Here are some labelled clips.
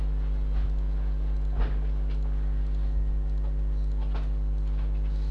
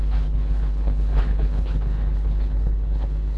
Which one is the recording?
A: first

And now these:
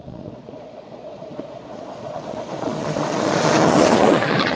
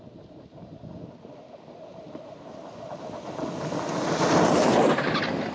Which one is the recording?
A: second